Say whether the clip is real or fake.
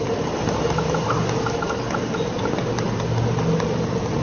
real